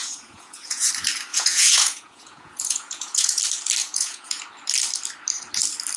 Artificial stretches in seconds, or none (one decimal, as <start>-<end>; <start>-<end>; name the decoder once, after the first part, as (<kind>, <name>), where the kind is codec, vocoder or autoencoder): 0.0-0.9 (vocoder, Vocos); 1.3-3.4; 3.8-4.4